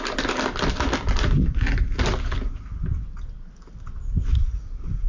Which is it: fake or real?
real